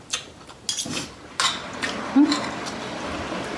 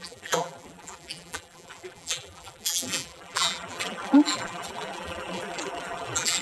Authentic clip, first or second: first